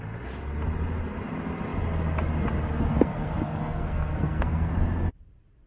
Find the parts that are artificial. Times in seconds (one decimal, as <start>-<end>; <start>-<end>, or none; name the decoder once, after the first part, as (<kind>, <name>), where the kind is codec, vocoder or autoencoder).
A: 2.9-4.7 (codec, SNAC)